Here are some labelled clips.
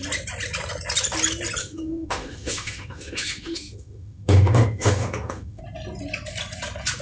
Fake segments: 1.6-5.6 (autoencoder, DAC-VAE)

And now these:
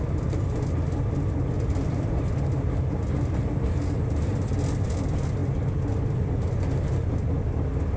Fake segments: none

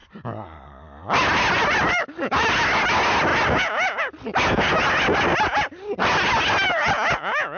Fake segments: none

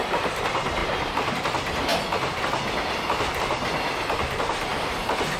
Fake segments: 0.8-1.3 (vocoder, BigVGAN v2)

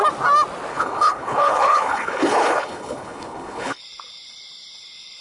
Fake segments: 0.7-3.8 (codec, HILCodec)